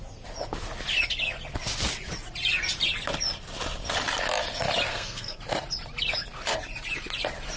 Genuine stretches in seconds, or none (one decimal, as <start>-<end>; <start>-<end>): 0.0-4.9; 5.4-7.6